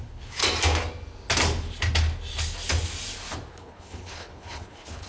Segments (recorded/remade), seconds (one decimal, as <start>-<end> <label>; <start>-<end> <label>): 0.0-0.4 remade; 0.4-3.5 recorded; 3.5-5.1 remade